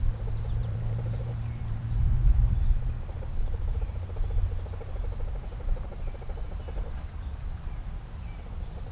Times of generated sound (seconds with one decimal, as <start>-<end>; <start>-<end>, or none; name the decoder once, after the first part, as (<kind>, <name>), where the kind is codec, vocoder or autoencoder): 0.6-4.5 (vocoder, BigVGAN v2)